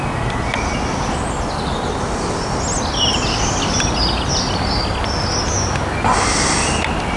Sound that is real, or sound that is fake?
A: real